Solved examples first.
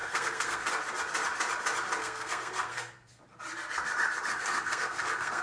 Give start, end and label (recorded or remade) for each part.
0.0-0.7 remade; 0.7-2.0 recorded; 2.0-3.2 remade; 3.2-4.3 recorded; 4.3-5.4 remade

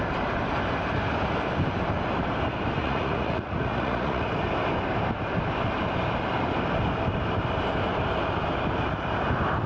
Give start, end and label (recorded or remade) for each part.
0.0-2.8 recorded; 2.8-4.3 remade; 4.3-9.7 recorded

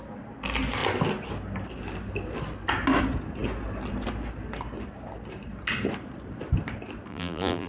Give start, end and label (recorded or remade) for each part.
0.0-7.1 recorded; 7.1-7.7 remade